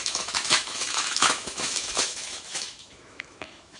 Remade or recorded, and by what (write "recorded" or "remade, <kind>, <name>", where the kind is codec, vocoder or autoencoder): remade, autoencoder, DAC-VAE